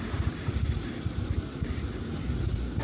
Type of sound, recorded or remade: recorded